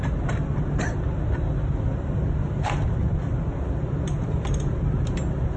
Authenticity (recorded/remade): recorded